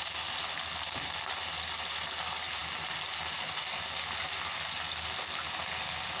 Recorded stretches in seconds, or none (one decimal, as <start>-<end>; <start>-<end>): 0.0-6.2